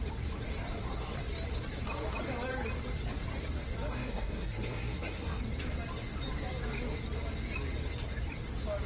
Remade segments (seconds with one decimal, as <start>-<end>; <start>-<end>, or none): 3.9-5.4